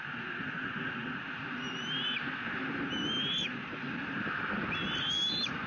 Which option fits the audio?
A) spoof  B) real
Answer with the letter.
B